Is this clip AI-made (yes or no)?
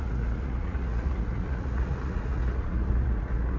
yes